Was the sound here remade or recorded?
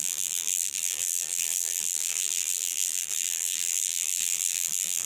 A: remade